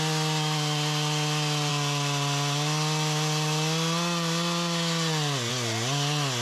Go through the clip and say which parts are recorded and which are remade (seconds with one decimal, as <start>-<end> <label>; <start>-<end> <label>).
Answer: 0.0-6.4 recorded